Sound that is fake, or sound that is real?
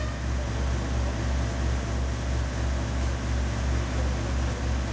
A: real